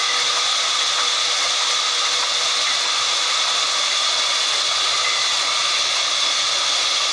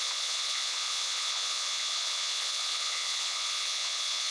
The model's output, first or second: second